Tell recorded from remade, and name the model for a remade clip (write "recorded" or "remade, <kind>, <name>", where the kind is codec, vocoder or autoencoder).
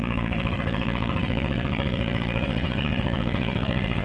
remade, vocoder, WaveNeXt